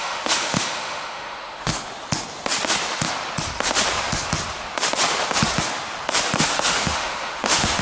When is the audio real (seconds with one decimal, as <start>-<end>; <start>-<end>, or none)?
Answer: 1.7-6.4

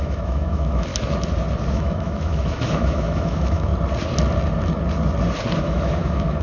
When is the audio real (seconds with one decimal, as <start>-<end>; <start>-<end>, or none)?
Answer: 0.9-1.7; 3.7-5.6